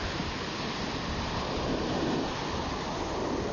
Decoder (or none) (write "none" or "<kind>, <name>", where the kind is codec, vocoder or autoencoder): none